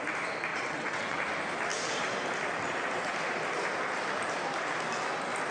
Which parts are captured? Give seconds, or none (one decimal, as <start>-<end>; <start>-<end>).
0.0-0.5; 1.2-5.5